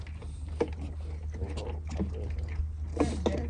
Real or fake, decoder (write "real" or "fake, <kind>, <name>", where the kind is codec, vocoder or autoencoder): real